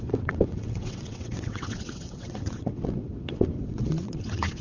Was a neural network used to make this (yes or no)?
yes